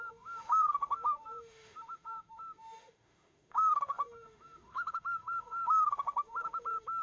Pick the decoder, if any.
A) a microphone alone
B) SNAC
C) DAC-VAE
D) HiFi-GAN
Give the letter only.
C